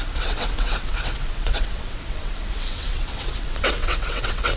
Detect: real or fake fake